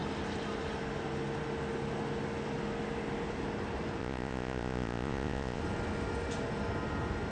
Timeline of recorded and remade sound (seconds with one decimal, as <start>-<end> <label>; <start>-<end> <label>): 0.0-4.0 recorded; 4.0-5.6 remade; 5.6-7.3 recorded